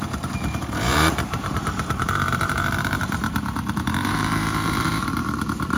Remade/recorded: remade